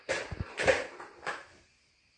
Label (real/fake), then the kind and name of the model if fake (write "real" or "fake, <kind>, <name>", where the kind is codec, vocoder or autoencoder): fake, vocoder, BigVGAN v2